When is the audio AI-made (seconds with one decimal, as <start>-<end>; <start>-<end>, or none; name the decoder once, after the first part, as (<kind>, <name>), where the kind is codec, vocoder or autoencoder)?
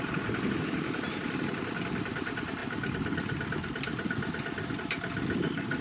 none